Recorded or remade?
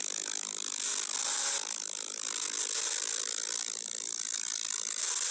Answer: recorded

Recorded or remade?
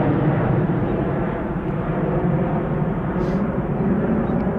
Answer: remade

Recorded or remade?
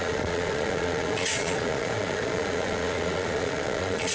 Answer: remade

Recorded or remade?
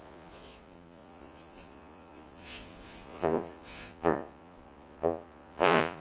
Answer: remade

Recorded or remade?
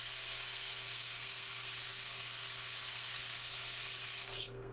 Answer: remade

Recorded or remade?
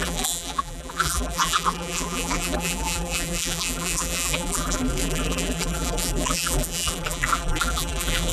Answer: remade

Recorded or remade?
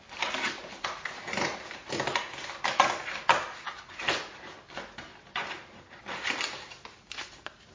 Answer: recorded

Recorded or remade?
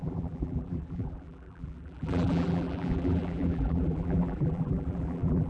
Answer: remade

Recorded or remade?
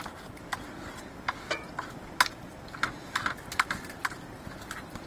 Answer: recorded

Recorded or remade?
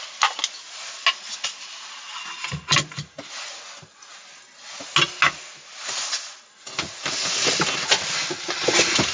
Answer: recorded